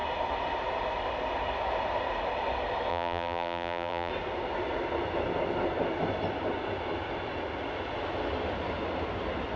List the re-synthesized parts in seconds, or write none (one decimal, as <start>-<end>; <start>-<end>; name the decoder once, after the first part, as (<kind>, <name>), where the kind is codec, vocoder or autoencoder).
2.9-4.1 (vocoder, BigVGAN v2)